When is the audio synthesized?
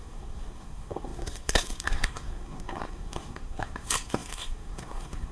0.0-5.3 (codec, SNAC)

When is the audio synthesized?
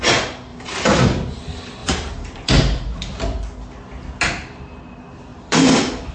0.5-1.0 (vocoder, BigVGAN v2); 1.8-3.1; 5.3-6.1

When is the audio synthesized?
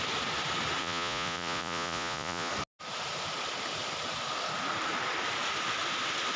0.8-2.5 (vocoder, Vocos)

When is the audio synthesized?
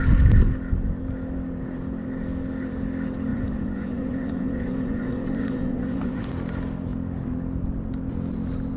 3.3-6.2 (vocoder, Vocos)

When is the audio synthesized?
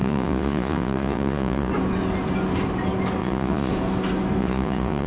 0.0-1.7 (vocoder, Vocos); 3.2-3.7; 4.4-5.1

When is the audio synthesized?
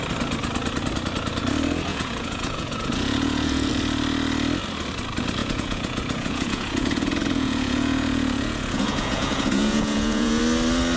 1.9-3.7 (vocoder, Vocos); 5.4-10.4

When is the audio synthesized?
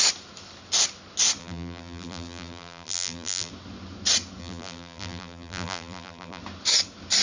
1.4-3.5 (vocoder, BigVGAN v2); 4.4-6.4